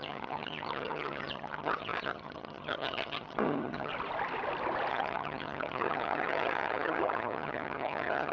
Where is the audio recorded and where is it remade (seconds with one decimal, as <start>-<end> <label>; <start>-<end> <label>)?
0.0-3.9 remade; 3.9-4.9 recorded; 4.9-8.3 remade